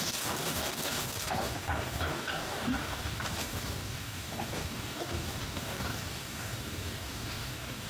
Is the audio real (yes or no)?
no